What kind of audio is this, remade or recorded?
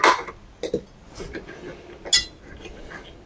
recorded